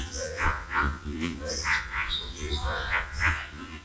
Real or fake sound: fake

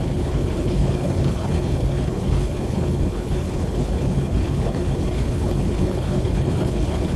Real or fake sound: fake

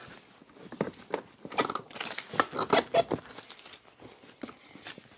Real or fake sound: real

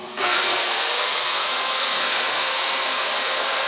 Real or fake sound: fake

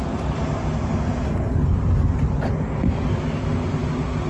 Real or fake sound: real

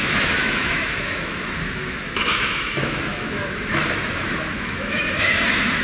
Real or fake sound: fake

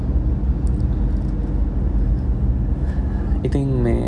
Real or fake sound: real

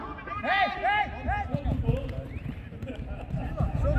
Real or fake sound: real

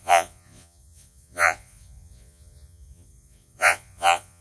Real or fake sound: fake